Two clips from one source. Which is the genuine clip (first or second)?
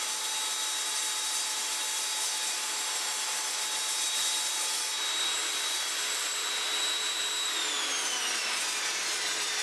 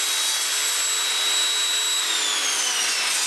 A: second